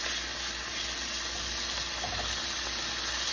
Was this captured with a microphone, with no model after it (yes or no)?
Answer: yes